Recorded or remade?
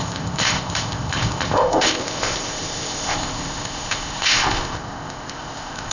remade